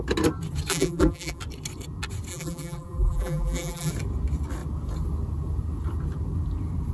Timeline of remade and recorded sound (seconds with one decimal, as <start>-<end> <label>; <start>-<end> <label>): 0.0-0.7 recorded; 0.7-1.4 remade; 1.4-2.3 recorded; 2.3-3.9 remade; 3.9-6.9 recorded